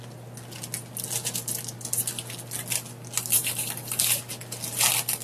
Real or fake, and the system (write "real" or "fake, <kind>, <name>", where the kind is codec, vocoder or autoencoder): real